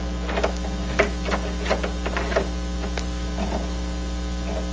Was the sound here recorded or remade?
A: recorded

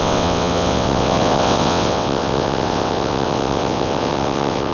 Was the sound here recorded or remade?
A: remade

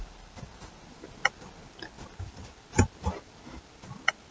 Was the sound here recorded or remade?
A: recorded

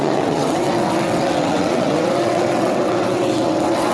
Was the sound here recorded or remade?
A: remade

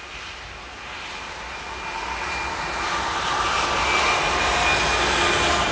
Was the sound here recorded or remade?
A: recorded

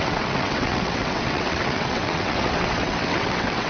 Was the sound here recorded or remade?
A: remade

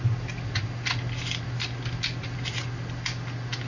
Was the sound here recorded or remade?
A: recorded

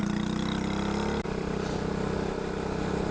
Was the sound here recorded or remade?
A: recorded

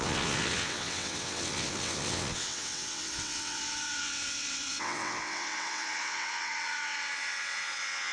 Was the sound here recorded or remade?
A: remade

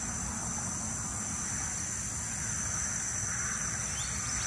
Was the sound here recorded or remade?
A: recorded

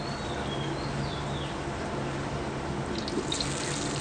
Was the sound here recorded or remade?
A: recorded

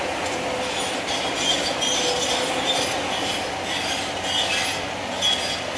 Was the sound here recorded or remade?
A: recorded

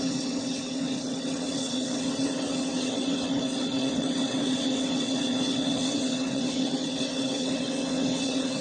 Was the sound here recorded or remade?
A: remade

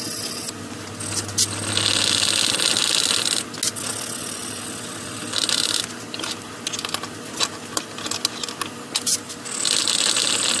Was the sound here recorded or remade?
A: recorded